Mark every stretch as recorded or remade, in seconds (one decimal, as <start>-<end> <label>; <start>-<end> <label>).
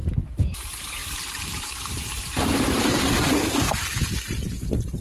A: 0.0-5.0 remade